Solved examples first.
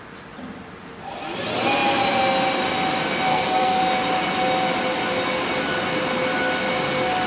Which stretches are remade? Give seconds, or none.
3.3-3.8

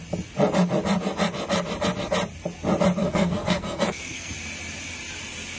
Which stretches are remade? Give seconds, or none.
3.0-4.3

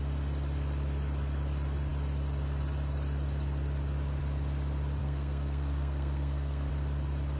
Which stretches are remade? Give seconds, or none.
5.0-6.7

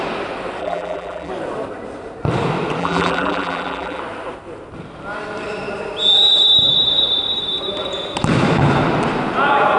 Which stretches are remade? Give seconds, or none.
0.6-1.3; 2.8-4.0

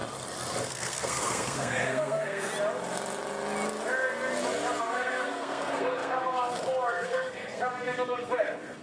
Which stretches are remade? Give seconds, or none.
0.6-2.5; 4.8-8.8